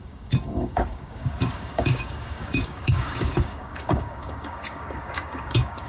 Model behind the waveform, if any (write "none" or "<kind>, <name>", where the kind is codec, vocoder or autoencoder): codec, DAC